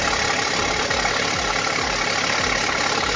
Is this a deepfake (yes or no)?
no